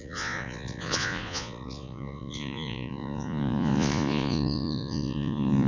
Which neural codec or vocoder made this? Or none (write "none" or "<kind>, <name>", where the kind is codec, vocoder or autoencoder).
vocoder, Vocos